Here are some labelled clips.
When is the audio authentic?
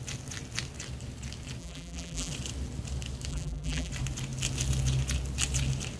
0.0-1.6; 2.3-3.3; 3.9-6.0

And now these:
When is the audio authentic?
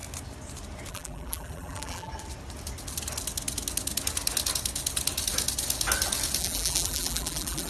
0.0-0.9; 2.1-6.4